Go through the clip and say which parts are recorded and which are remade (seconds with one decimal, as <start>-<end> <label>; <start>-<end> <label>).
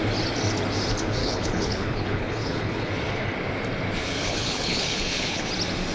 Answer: 0.0-1.2 recorded; 1.2-2.9 remade; 2.9-4.0 recorded; 4.0-5.5 remade; 5.5-5.9 recorded